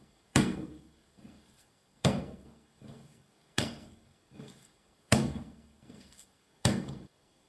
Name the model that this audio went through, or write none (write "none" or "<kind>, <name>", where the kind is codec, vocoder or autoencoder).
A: codec, SNAC